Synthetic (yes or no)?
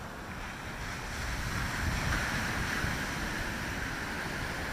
no